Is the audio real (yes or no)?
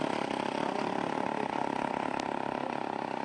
yes